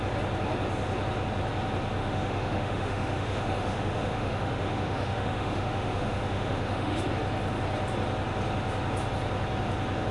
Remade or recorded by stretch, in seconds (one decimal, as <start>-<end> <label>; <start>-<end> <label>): 0.0-2.0 recorded; 2.0-7.1 remade; 7.1-10.1 recorded